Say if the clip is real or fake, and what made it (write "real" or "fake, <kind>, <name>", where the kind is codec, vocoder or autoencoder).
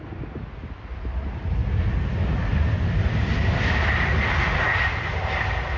real